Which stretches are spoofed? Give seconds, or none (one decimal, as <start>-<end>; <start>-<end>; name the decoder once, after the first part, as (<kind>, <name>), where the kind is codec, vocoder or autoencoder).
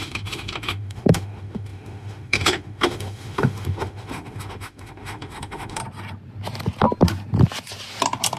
0.0-5.8 (autoencoder, DAC-VAE)